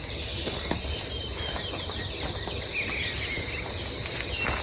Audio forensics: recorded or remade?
recorded